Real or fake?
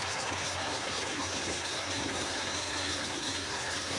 fake